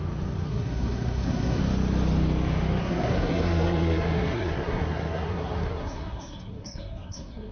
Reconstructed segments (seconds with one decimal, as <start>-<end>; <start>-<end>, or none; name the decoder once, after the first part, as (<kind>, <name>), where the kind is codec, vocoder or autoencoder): 0.5-1.6 (codec, SNAC); 2.8-7.5